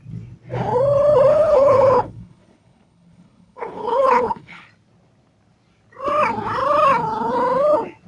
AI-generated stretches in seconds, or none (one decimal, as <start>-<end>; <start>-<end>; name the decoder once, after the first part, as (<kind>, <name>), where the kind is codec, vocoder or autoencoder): 1.3-4.7 (codec, HILCodec)